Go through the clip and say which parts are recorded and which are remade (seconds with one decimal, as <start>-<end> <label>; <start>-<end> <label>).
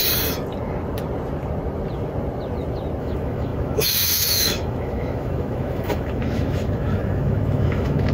0.0-3.0 recorded; 3.0-8.1 remade